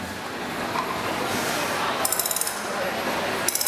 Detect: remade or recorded recorded